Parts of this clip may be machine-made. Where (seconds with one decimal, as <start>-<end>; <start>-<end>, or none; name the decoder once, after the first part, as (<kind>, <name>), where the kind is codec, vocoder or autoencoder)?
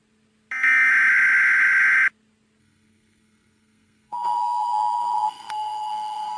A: 2.6-6.4 (codec, SNAC)